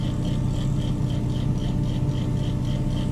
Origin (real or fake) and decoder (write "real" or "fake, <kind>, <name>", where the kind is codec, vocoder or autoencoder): real